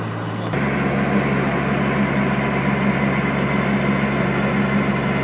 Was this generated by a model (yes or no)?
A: no